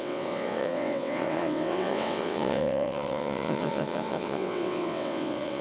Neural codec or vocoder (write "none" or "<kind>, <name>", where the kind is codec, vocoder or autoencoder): vocoder, WaveNeXt